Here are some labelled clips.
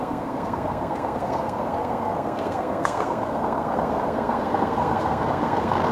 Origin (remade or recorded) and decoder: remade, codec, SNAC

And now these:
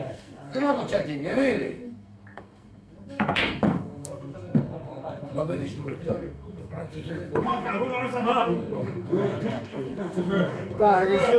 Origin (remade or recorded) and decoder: remade, codec, SNAC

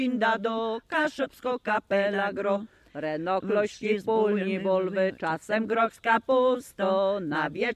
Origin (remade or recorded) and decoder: recorded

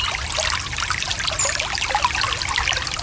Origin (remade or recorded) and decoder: recorded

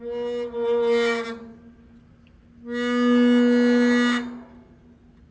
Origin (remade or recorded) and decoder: recorded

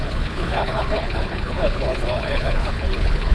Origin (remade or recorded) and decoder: remade, codec, HILCodec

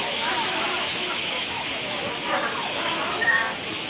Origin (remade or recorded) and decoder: remade, autoencoder, DAC-VAE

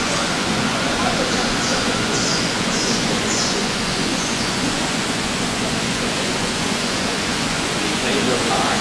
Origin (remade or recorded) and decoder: remade, vocoder, Vocos